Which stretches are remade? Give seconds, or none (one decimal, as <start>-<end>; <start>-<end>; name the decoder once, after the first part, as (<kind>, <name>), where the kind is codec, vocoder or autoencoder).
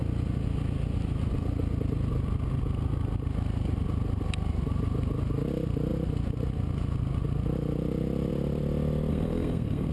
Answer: 9.1-9.9 (codec, SNAC)